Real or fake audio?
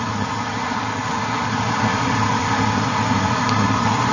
real